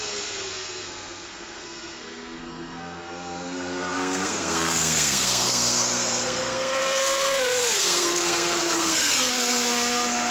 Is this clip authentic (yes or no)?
no